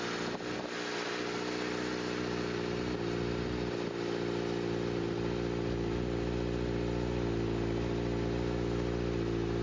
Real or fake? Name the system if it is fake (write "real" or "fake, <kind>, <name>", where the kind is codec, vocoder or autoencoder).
real